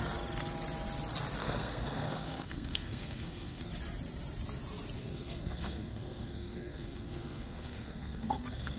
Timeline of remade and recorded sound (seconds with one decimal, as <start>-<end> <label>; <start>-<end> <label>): 0.0-1.4 recorded; 1.4-3.7 remade; 3.7-5.0 recorded; 5.0-8.8 remade